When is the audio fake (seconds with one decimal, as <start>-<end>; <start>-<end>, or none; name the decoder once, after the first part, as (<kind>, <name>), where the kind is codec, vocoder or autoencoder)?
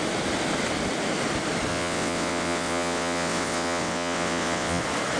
1.7-4.8 (vocoder, WaveNeXt)